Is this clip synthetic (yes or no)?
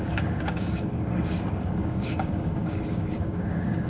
yes